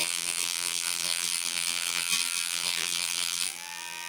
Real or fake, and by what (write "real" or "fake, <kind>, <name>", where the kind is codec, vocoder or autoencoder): fake, vocoder, BigVGAN v2